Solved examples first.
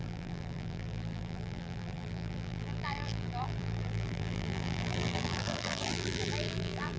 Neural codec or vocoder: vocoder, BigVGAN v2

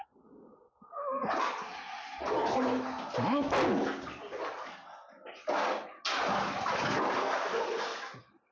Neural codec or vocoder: none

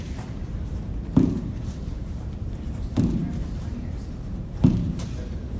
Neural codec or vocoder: vocoder, BigVGAN v2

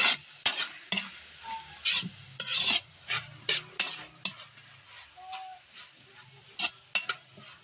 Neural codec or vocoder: none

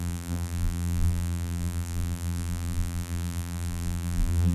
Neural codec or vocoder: vocoder, BigVGAN v2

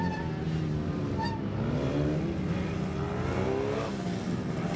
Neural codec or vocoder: none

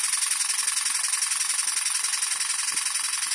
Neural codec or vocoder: none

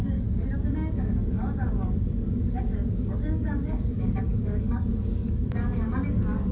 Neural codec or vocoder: codec, DAC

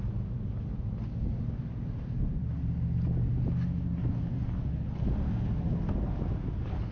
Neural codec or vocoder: none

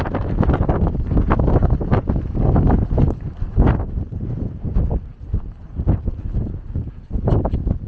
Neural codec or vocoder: none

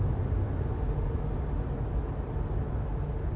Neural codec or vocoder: none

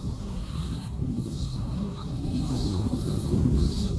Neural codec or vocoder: codec, SNAC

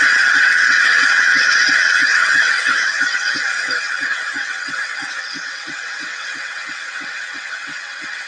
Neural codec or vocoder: vocoder, WaveNeXt